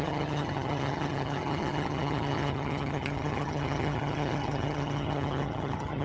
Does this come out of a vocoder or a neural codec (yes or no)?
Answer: yes